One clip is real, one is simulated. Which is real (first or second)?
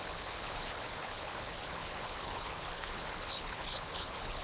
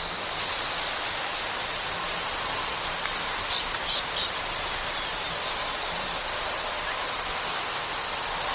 second